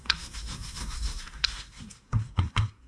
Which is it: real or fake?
fake